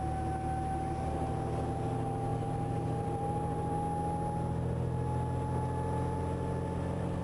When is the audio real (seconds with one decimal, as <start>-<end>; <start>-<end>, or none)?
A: 0.0-2.3; 3.7-7.2